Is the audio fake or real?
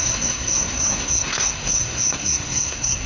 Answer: fake